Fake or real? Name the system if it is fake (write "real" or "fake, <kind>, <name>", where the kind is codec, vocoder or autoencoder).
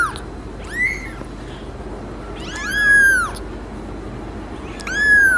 real